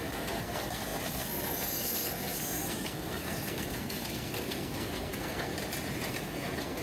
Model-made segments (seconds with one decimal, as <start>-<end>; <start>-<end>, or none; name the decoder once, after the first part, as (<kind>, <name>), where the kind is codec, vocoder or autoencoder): 0.0-5.5 (codec, SNAC); 6.1-6.8